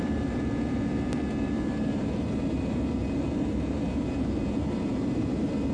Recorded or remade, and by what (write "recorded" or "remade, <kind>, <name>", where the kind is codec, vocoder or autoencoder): remade, vocoder, BigVGAN v2